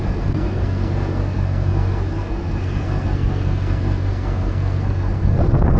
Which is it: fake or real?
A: fake